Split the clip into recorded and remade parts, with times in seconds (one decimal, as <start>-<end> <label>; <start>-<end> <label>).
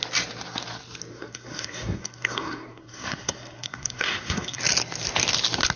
0.0-1.1 recorded; 1.1-4.6 remade; 4.6-5.8 recorded